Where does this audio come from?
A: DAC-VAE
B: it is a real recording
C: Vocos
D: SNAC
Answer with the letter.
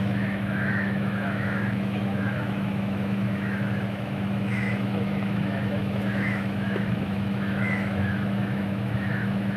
A